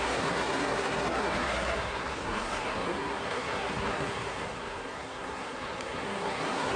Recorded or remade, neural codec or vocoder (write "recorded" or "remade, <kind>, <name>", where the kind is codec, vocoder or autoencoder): remade, codec, SNAC